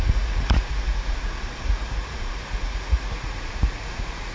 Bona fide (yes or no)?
no